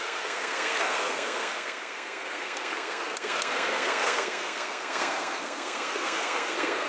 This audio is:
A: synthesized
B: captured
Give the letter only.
A